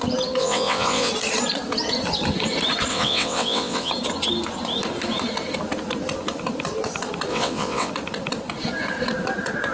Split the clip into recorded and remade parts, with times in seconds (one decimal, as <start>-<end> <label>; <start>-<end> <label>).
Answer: 0.0-0.4 recorded; 0.4-1.1 remade; 1.1-2.9 recorded; 2.9-3.9 remade; 3.9-7.3 recorded; 7.3-7.9 remade; 7.9-9.7 recorded